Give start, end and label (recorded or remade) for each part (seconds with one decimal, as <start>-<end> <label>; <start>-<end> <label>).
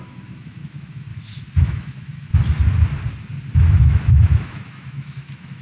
0.0-1.1 remade; 1.1-1.6 recorded; 1.6-2.3 remade; 2.3-3.8 recorded; 3.8-5.6 remade